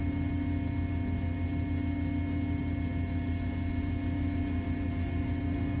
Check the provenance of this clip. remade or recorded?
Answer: recorded